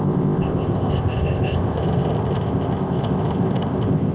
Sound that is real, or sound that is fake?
fake